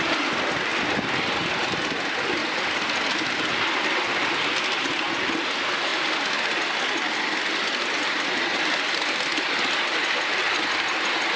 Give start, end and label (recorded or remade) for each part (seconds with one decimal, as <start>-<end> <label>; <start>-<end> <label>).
0.0-11.4 recorded